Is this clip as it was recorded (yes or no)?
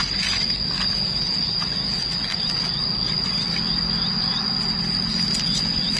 yes